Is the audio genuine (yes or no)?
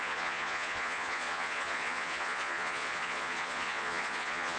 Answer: no